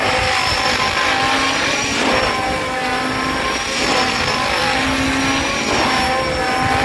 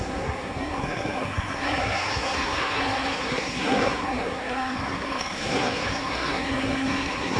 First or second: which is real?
first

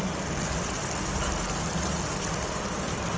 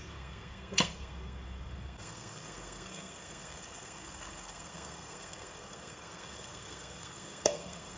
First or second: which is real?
first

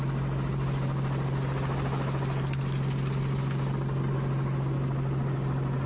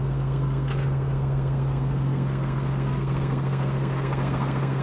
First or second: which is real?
first